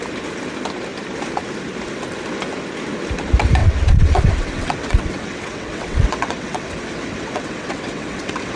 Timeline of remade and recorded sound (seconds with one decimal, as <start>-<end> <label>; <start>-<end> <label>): 0.0-3.6 recorded; 3.6-8.6 remade